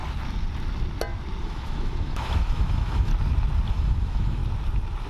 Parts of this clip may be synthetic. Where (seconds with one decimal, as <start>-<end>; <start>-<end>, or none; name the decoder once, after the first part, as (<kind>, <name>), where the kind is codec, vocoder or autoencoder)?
1.4-3.1 (autoencoder, DAC-VAE); 3.7-4.4

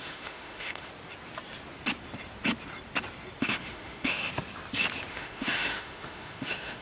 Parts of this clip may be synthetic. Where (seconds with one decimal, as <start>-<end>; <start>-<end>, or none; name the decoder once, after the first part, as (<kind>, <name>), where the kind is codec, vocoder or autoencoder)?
0.0-0.9 (autoencoder, DAC-VAE); 3.4-4.2; 5.1-6.8

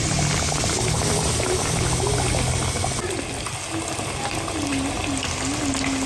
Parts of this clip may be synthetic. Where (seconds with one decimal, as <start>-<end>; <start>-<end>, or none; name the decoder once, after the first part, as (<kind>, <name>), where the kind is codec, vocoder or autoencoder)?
none

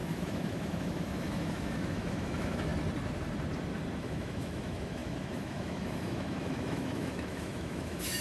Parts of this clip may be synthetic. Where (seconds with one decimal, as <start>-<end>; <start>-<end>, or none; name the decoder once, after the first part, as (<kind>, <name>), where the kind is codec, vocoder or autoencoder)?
0.0-2.7 (autoencoder, DAC-VAE); 4.0-8.2

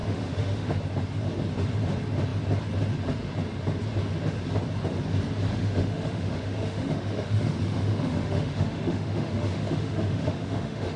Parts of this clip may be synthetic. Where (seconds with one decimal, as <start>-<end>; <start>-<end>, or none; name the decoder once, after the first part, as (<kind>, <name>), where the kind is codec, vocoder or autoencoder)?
0.0-0.8 (autoencoder, DAC-VAE); 5.5-11.0

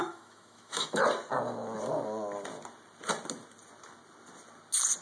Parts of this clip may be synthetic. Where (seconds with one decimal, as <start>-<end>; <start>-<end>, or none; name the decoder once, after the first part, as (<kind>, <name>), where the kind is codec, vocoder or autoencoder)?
0.0-1.0 (autoencoder, DAC-VAE)

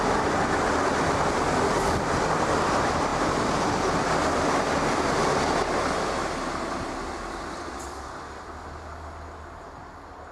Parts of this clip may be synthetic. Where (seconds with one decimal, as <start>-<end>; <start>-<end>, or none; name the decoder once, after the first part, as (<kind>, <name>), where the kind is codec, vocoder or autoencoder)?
none

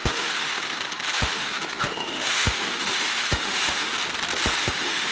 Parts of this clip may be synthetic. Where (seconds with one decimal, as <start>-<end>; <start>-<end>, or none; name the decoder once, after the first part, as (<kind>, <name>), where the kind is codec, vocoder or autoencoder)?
0.0-3.9 (autoencoder, DAC-VAE); 4.6-5.1